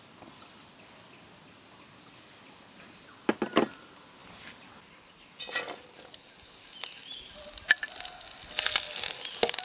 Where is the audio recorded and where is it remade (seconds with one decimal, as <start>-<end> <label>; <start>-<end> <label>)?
0.0-4.2 recorded; 4.2-5.4 remade; 5.4-9.6 recorded